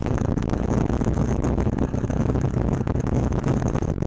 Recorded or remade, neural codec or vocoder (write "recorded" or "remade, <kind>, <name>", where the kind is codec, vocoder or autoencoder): remade, autoencoder, DAC-VAE